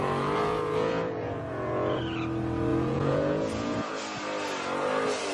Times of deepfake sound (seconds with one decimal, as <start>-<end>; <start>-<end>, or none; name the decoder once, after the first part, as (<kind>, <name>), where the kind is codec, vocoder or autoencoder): 0.0-2.0 (vocoder, Vocos); 2.7-4.0